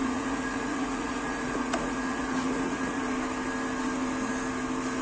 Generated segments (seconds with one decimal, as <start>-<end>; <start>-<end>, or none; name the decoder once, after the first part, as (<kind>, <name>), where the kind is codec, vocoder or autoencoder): 0.0-3.0 (vocoder, Vocos)